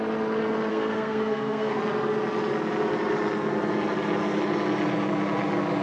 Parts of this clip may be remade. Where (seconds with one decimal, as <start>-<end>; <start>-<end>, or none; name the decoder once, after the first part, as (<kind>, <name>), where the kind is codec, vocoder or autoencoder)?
0.7-1.8 (codec, SNAC)